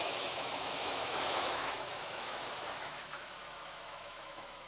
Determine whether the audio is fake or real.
fake